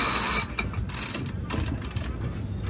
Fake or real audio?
real